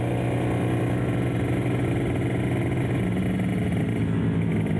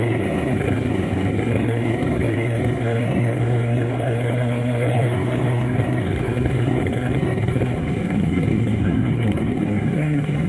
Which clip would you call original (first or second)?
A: first